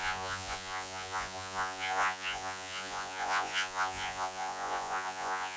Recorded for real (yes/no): no